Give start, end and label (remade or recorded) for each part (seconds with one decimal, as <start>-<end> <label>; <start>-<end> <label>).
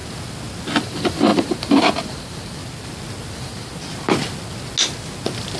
0.0-0.8 recorded; 0.8-2.6 remade; 2.6-3.3 recorded; 3.3-3.7 remade; 3.7-5.6 recorded